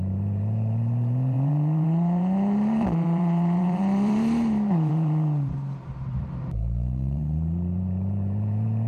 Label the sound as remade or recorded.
remade